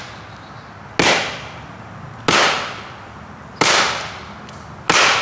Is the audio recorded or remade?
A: recorded